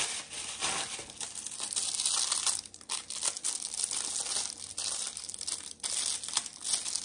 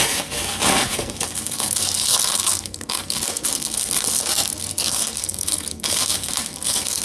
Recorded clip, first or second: first